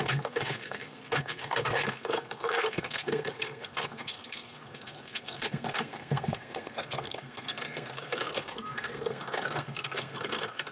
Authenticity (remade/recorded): remade